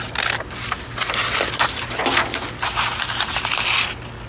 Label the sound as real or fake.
real